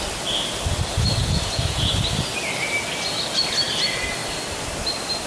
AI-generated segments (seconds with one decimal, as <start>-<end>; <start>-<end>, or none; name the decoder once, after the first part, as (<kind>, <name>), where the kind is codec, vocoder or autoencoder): 1.2-1.9 (vocoder, Vocos)